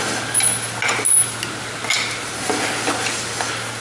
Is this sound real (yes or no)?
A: yes